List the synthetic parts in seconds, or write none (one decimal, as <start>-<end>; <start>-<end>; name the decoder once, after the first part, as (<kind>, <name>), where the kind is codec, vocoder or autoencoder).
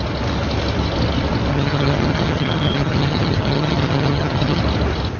1.5-4.6 (vocoder, HiFi-GAN)